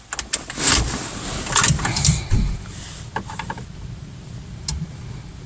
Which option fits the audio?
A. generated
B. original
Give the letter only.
B